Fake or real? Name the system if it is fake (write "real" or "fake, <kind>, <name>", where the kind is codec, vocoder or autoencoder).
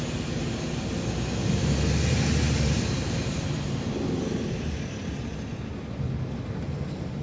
real